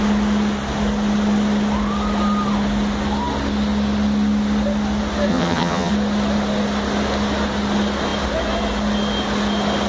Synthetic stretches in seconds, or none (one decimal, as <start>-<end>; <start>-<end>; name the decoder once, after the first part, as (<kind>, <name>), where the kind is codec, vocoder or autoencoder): 5.3-5.9 (vocoder, HiFi-GAN)